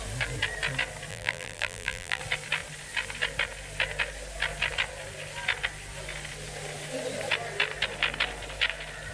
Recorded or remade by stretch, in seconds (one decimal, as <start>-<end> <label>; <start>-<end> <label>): 0.0-1.1 recorded; 1.1-2.2 remade; 2.2-9.1 recorded